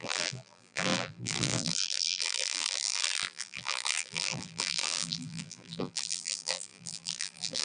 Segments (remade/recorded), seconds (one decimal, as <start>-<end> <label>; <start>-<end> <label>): 0.0-7.6 remade